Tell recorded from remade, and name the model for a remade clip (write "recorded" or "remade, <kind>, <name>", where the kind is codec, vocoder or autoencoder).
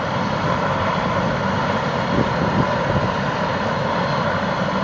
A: recorded